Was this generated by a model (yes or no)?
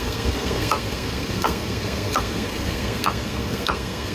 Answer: yes